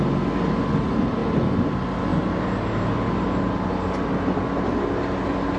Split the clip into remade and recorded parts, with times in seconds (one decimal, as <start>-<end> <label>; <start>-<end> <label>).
0.0-5.6 recorded